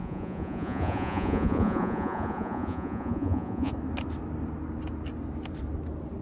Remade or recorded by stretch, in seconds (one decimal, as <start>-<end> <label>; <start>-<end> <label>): 0.0-3.7 remade; 3.7-6.2 recorded